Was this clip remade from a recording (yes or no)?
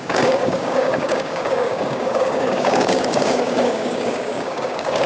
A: yes